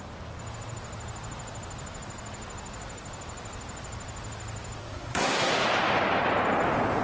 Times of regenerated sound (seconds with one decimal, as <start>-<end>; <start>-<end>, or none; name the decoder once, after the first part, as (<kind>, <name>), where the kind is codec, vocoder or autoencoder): 4.8-5.5 (codec, SNAC)